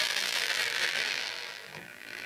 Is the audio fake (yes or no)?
yes